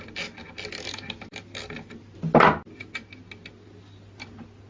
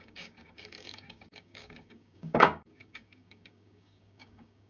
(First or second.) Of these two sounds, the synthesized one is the second